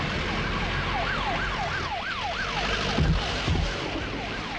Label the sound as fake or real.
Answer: real